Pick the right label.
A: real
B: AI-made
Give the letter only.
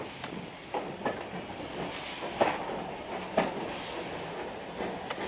A